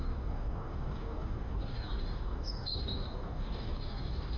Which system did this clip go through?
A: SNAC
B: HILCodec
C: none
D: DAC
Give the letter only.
D